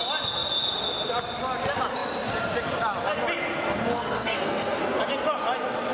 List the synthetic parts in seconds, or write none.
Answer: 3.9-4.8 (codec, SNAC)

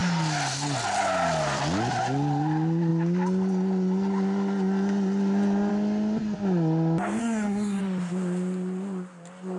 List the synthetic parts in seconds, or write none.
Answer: 7.2-7.8 (codec, SNAC)

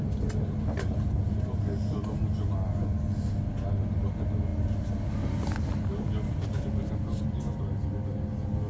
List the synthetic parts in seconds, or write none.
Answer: none

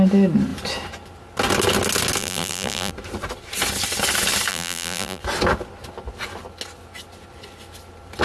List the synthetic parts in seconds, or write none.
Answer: 2.2-2.9 (vocoder, BigVGAN v2); 4.5-5.2

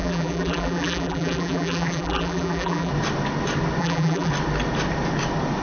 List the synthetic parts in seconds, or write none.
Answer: 0.0-2.9 (vocoder, BigVGAN v2); 3.8-4.3

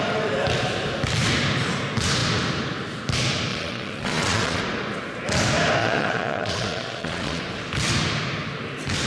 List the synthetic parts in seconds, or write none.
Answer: 3.5-4.6 (vocoder, Vocos); 5.8-7.4